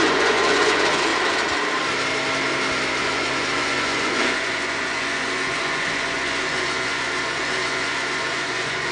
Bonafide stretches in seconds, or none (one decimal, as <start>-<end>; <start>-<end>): 1.1-3.0